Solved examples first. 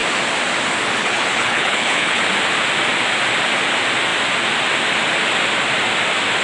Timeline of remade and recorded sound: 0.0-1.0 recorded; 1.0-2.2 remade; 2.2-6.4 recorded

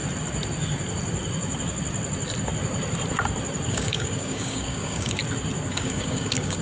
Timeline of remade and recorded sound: 0.0-3.7 recorded; 3.7-5.2 remade; 5.2-5.7 recorded; 5.7-6.6 remade

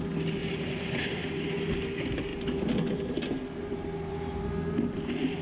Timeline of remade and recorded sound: 0.0-0.4 recorded; 0.4-1.2 remade; 1.2-5.4 recorded